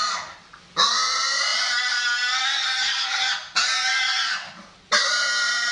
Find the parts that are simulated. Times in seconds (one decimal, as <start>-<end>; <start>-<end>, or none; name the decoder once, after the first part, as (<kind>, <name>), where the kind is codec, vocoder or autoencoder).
none